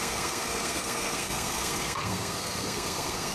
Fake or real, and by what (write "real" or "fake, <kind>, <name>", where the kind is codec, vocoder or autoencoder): fake, codec, SNAC